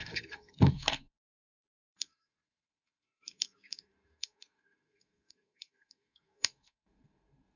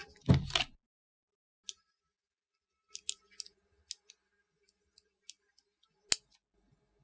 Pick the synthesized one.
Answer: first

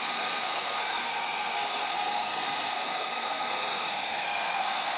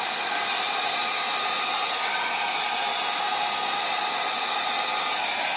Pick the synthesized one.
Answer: first